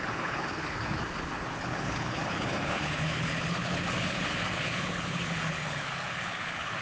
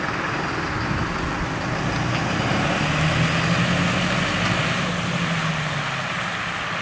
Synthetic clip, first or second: first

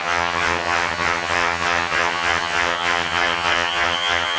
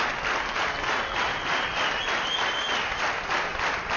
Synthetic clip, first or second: first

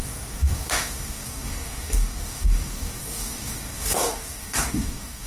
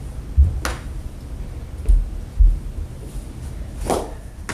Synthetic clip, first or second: first